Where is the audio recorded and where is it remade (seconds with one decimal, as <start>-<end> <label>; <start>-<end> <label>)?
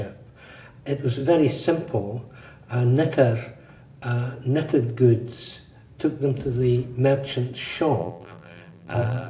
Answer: 0.0-8.0 recorded; 8.0-9.3 remade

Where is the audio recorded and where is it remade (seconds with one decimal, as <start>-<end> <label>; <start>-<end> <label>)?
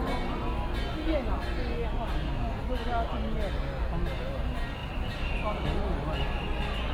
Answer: 0.0-4.8 recorded; 4.8-5.8 remade; 5.8-6.9 recorded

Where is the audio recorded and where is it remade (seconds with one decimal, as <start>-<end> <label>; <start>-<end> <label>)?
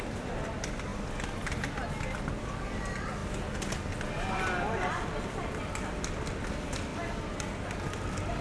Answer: 0.0-8.4 recorded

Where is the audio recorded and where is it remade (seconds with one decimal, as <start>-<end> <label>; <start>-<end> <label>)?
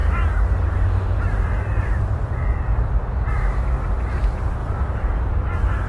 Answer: 0.0-1.4 recorded; 1.4-3.0 remade; 3.0-4.0 recorded; 4.0-5.9 remade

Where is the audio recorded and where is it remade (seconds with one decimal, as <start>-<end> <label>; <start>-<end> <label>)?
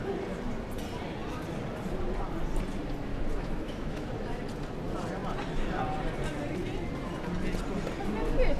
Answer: 0.0-3.1 recorded; 3.1-4.1 remade; 4.1-8.6 recorded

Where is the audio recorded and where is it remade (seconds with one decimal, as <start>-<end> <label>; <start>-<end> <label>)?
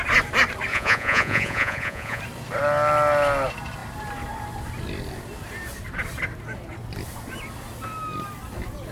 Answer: 0.0-0.7 recorded; 0.7-2.2 remade; 2.2-8.9 recorded